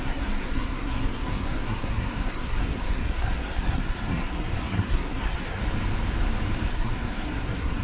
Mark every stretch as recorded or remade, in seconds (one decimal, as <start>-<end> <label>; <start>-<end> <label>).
0.0-5.6 remade; 5.6-6.7 recorded; 6.7-7.8 remade